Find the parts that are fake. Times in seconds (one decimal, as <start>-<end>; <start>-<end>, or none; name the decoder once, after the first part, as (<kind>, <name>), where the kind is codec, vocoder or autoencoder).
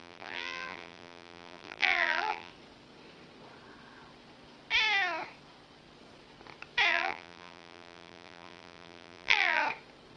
0.0-2.5 (vocoder, BigVGAN v2); 6.9-9.6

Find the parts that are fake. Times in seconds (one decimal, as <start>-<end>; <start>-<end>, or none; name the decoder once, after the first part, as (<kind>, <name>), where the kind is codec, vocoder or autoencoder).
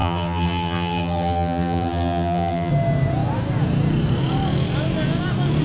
0.0-2.7 (vocoder, BigVGAN v2)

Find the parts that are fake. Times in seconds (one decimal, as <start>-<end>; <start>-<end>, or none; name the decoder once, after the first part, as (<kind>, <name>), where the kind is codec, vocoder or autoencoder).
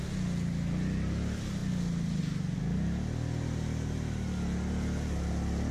none